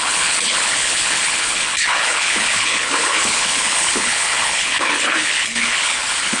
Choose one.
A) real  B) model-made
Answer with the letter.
B